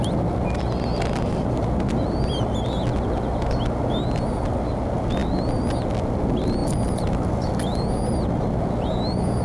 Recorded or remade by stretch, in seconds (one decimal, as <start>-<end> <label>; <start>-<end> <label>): 0.0-9.4 recorded